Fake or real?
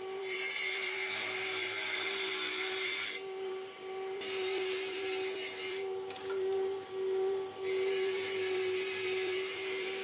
fake